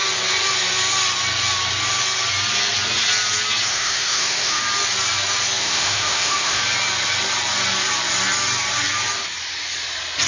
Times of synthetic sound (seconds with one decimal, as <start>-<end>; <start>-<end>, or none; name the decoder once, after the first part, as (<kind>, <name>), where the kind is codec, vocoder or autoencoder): 3.7-4.6 (autoencoder, DAC-VAE); 5.6-6.6